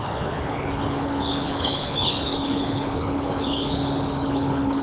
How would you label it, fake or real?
fake